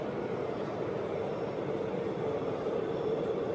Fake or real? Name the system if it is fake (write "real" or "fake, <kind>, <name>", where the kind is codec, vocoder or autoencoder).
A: fake, vocoder, BigVGAN v2